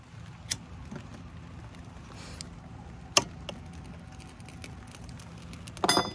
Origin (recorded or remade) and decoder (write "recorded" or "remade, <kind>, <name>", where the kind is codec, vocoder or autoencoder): recorded